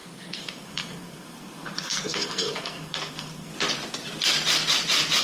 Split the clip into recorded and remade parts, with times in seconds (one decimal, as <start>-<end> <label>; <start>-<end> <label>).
0.0-3.5 remade; 3.5-5.2 recorded